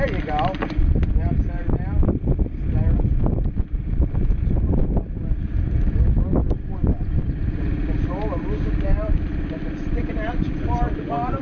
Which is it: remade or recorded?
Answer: recorded